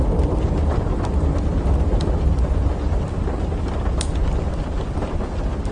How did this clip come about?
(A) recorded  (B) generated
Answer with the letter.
A